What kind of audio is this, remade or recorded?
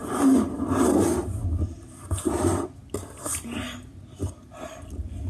recorded